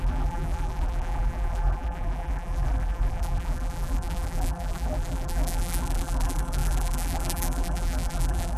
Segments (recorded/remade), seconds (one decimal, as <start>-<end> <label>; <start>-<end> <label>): 0.0-8.6 remade